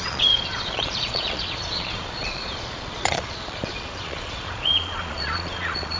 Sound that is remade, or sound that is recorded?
remade